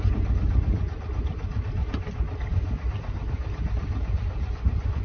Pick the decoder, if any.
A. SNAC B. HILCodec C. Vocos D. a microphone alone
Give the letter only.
D